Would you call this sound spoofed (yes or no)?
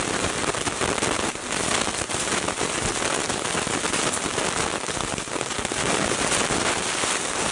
no